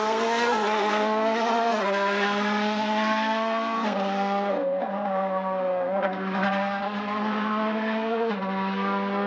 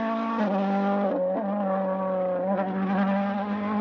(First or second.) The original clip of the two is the second